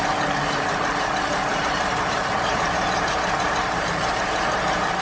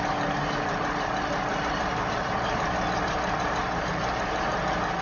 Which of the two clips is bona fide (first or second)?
second